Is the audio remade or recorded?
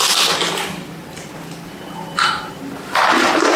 recorded